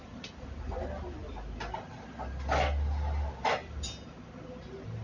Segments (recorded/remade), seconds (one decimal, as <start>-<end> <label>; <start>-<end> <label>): 0.0-5.0 recorded